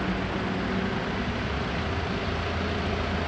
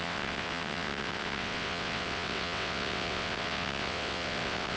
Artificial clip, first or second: second